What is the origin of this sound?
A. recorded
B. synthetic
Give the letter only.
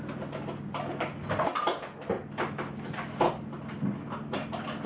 A